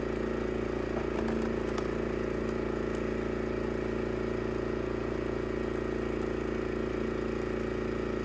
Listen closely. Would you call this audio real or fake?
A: real